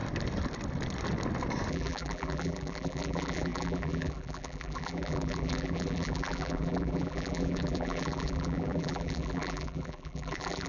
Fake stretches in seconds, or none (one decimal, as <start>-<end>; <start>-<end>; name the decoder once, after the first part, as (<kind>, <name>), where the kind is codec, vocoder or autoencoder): 1.7-10.7 (vocoder, BigVGAN v2)